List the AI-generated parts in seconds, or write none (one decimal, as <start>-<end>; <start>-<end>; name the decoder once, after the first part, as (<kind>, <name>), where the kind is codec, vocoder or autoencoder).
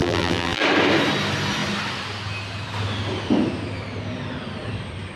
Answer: 0.0-0.6 (vocoder, BigVGAN v2)